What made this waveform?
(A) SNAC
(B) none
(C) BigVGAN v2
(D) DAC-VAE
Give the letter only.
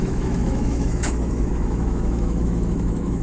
D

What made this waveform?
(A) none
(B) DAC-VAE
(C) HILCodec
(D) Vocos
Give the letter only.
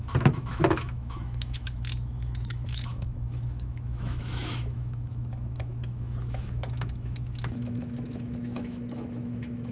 B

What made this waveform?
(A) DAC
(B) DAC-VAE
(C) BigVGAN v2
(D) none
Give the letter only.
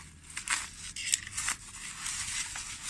D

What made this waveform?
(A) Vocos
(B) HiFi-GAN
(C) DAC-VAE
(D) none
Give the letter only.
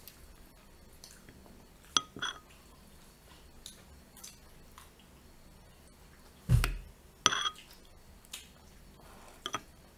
D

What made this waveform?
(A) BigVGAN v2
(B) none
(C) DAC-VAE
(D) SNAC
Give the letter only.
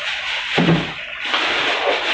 B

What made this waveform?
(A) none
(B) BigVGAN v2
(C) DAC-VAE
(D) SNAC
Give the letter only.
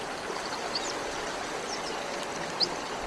A